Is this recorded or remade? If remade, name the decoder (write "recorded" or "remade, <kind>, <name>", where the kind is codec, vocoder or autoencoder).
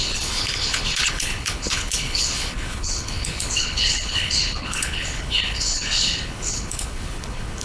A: remade, codec, HILCodec